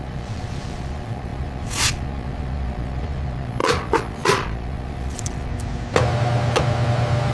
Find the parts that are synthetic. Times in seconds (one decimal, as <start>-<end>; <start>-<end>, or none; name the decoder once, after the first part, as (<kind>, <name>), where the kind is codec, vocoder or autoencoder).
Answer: 0.0-5.5 (vocoder, Vocos)